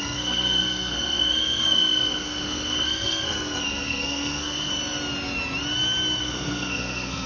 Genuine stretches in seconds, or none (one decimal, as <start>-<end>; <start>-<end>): 4.7-6.2